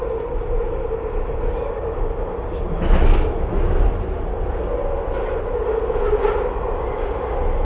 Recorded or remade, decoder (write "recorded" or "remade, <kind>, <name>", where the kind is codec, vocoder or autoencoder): recorded